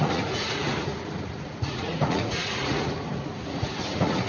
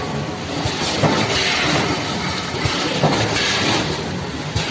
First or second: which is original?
second